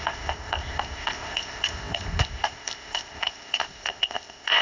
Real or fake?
fake